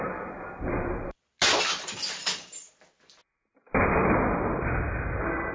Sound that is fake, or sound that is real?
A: real